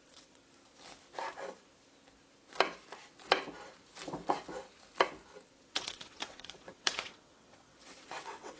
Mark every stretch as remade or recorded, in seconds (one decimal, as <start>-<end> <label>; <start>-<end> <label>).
0.0-0.4 remade; 0.4-5.6 recorded; 5.6-8.6 remade